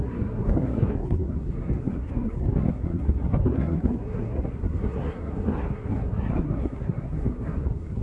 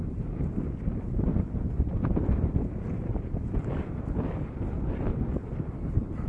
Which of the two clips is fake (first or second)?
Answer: first